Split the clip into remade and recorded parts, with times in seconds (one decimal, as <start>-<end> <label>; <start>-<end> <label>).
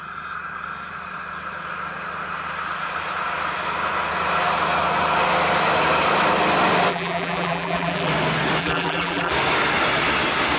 0.0-6.9 recorded; 6.9-8.1 remade; 8.1-8.6 recorded; 8.6-9.3 remade; 9.3-10.6 recorded